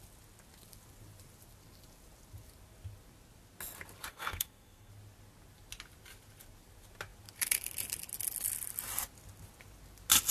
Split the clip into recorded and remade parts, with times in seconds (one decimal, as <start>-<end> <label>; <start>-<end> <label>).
0.0-4.1 recorded; 4.1-4.9 remade; 4.9-10.3 recorded